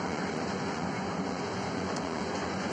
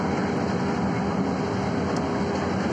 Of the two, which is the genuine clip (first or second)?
second